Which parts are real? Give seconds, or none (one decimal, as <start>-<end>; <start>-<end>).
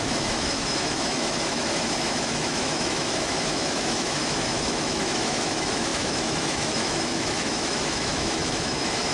none